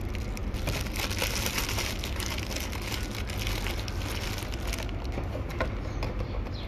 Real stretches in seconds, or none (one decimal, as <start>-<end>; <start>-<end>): 0.0-6.7